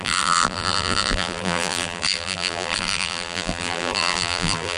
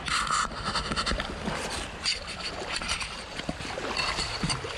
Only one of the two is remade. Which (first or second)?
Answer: first